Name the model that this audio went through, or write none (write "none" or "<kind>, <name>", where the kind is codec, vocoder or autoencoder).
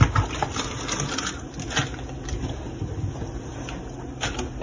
none